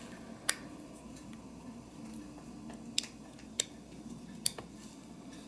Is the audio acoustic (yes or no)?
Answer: yes